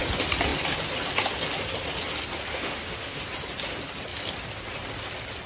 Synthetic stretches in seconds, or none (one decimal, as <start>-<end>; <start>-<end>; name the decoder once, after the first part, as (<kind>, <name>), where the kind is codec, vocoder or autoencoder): 2.5-3.2 (autoencoder, DAC-VAE)

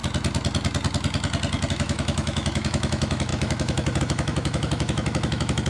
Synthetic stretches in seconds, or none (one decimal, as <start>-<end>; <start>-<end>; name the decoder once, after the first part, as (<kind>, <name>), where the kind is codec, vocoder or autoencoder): 1.7-5.7 (autoencoder, DAC-VAE)